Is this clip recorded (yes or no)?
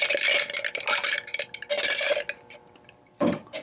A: yes